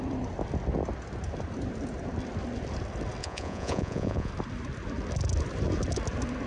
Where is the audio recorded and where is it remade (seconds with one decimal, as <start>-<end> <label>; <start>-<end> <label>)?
0.0-3.2 recorded; 3.2-4.3 remade; 4.3-6.5 recorded